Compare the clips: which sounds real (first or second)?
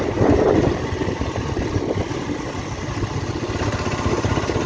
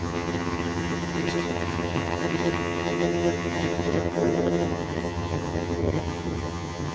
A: first